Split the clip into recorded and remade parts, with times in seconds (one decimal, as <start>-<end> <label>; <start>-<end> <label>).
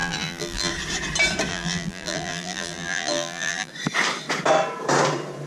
0.0-0.7 remade; 0.7-1.5 recorded; 1.5-3.7 remade; 3.7-5.5 recorded